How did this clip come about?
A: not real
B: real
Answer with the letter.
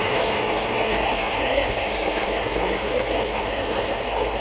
A